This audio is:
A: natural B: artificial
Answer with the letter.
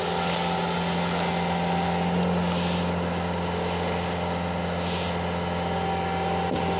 A